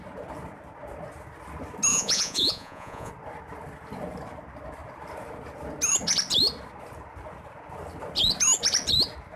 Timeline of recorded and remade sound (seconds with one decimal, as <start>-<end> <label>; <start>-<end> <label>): 0.0-1.9 recorded; 1.9-3.1 remade; 3.1-9.4 recorded